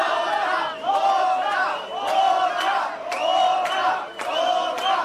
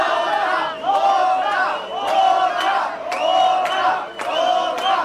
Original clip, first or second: second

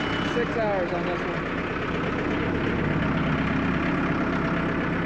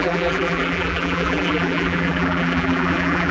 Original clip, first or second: first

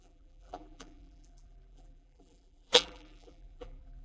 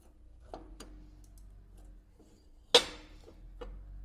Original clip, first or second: second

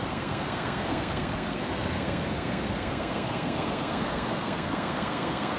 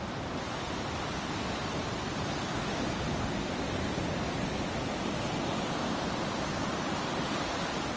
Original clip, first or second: second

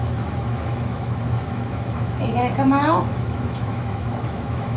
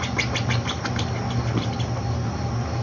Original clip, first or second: second